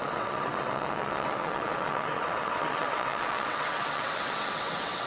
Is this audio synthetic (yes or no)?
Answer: yes